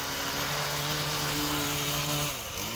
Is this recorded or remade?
recorded